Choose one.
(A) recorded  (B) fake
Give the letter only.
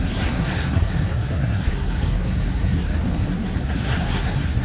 B